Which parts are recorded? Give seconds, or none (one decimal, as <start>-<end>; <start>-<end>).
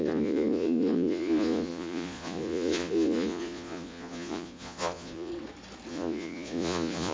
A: 5.3-5.9